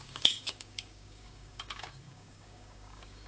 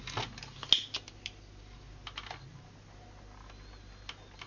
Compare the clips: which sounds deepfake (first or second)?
first